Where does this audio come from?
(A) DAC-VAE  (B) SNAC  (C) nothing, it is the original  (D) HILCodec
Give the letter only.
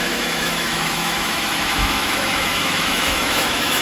A